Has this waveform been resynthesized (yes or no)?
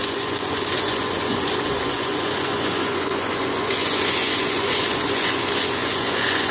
yes